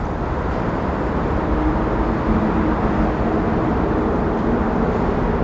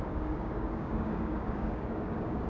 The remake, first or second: second